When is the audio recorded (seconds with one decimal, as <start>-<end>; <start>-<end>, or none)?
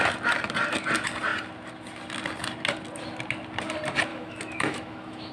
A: 0.0-4.1